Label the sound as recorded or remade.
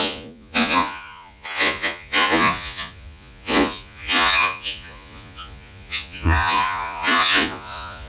remade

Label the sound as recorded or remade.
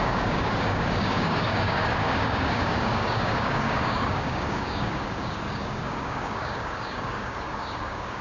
remade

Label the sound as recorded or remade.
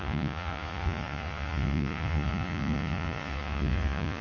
remade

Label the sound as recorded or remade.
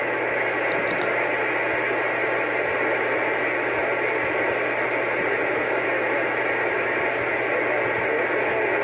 recorded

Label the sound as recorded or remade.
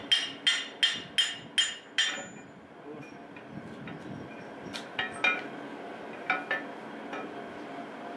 recorded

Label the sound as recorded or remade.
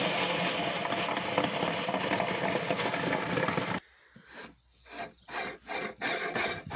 recorded